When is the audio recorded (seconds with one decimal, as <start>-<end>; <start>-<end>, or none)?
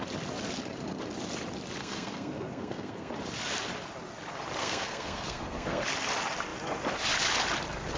0.0-1.8; 3.1-4.6; 5.8-8.0